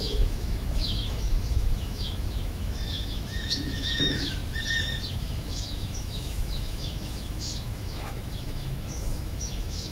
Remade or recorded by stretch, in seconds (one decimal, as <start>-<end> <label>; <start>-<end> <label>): 0.0-4.4 remade; 4.4-5.1 recorded; 5.1-9.9 remade